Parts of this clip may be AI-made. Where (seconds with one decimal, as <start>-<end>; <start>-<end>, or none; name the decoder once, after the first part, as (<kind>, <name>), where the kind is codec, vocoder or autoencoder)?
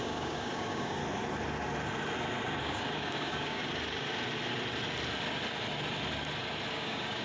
0.0-1.0 (codec, DAC); 2.6-3.6; 6.7-7.2